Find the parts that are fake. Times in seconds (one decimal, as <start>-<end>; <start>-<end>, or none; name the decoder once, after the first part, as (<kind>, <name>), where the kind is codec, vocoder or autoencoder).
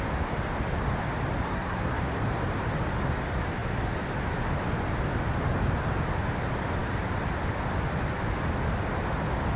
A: 1.5-2.0 (codec, SNAC)